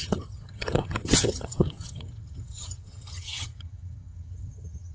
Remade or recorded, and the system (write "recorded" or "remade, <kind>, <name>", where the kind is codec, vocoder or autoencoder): remade, vocoder, HiFi-GAN